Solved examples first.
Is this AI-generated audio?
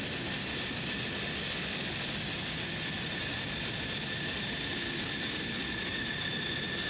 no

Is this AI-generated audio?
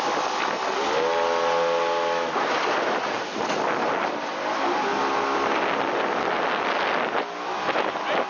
no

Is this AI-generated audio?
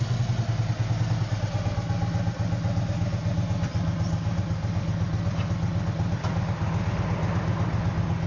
no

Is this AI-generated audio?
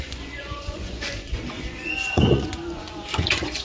yes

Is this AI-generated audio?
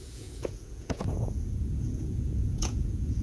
yes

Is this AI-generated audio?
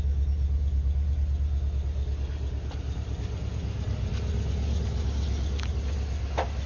no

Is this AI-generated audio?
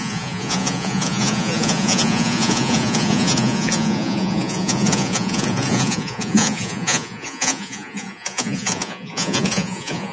yes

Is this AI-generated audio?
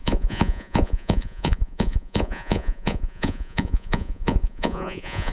yes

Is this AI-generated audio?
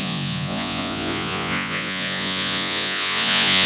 yes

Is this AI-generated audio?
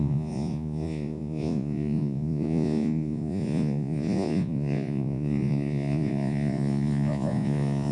yes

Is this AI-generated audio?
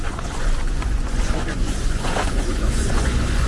yes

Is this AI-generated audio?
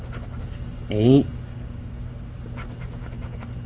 no